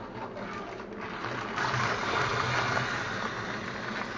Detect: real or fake real